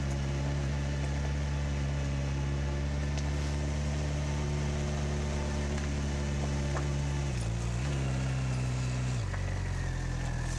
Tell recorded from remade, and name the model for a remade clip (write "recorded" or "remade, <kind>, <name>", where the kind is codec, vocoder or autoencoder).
recorded